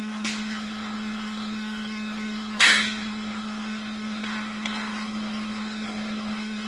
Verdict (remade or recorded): remade